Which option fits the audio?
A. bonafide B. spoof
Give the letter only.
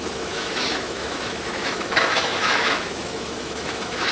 B